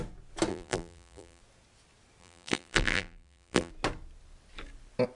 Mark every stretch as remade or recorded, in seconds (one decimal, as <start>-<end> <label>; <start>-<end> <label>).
0.0-0.5 recorded; 0.5-1.4 remade; 1.4-2.2 recorded; 2.2-3.7 remade; 3.7-5.2 recorded